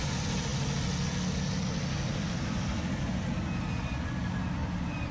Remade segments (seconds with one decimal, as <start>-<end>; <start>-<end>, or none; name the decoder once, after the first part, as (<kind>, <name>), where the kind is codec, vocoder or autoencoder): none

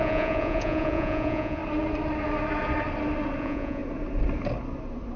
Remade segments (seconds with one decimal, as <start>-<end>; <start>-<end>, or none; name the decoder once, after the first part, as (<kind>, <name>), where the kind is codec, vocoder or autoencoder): 0.0-1.6 (vocoder, Vocos); 3.4-3.8

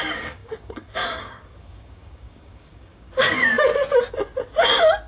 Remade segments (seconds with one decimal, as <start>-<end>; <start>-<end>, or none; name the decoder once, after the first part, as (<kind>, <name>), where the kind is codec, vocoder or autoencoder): 0.0-3.7 (codec, DAC)

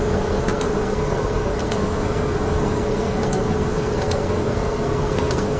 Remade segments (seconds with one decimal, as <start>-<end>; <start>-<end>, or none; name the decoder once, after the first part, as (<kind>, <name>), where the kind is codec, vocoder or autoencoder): 0.0-5.6 (codec, SNAC)

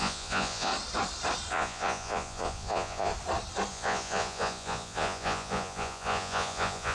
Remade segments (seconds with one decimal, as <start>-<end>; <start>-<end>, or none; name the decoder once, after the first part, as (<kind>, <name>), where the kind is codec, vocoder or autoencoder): 0.0-0.7 (vocoder, Vocos); 1.5-3.1; 3.7-6.9

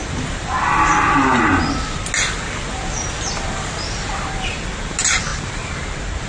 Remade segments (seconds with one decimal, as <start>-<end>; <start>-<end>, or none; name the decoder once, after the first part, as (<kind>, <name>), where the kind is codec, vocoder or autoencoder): 5.3-6.3 (vocoder, BigVGAN v2)

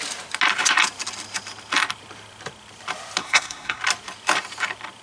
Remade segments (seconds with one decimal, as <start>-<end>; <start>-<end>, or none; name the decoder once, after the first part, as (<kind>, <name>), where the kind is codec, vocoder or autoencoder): 3.2-3.8 (codec, SNAC)

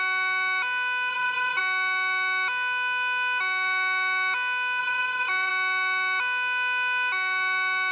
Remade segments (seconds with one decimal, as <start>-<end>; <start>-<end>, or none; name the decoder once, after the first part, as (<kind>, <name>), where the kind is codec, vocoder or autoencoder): 1.1-1.6 (vocoder, Vocos); 4.8-5.5